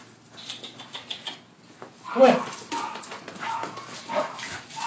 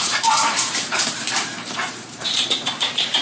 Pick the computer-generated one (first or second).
second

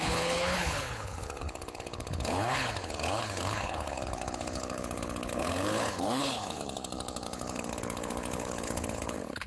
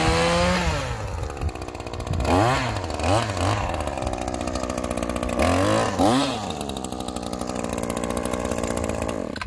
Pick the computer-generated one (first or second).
first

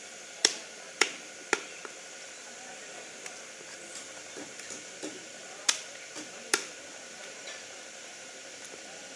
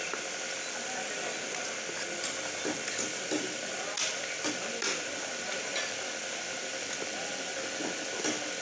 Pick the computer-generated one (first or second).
first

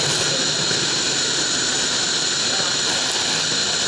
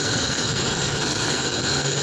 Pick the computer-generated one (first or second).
second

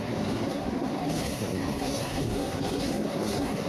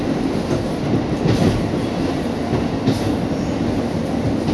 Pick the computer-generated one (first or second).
first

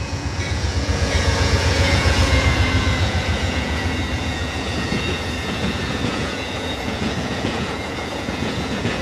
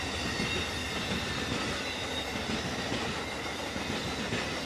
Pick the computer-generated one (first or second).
first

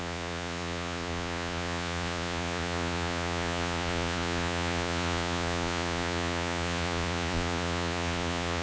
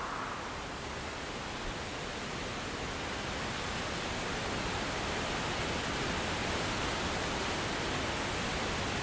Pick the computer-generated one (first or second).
first